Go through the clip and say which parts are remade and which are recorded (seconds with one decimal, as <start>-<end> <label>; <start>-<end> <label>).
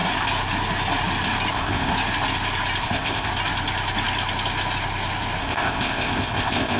0.0-1.5 recorded; 1.5-1.9 remade; 1.9-2.8 recorded; 2.8-3.3 remade; 3.3-5.4 recorded; 5.4-6.8 remade